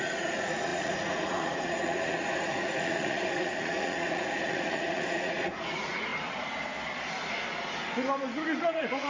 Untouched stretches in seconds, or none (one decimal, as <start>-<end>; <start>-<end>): 6.1-8.6